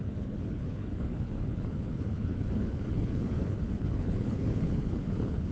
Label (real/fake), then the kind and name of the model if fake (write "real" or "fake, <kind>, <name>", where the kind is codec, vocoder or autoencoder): fake, codec, HILCodec